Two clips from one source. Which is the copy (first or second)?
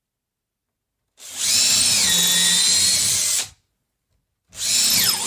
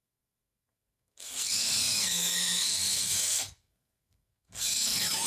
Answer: second